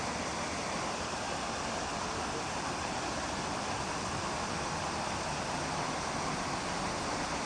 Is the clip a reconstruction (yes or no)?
no